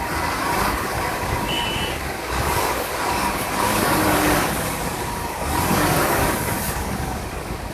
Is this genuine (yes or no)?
no